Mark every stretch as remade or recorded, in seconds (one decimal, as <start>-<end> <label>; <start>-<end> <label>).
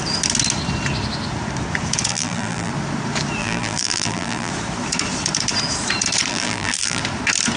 0.0-2.1 recorded; 2.1-2.7 remade; 2.7-3.4 recorded; 3.4-4.5 remade; 4.5-6.3 recorded; 6.3-7.0 remade; 7.0-7.6 recorded